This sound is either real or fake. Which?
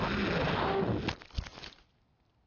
real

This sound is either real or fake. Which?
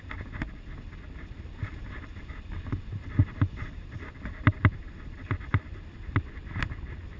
real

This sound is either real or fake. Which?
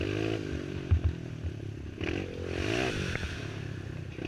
real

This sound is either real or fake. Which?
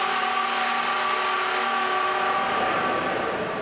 real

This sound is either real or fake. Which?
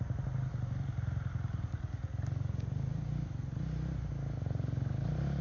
real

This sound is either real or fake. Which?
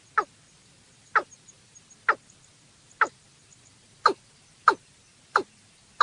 real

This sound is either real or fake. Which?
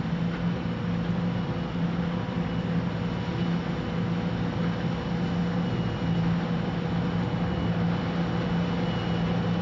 real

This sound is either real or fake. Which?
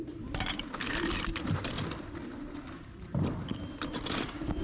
fake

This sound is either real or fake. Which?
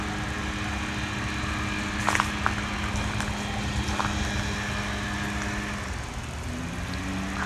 real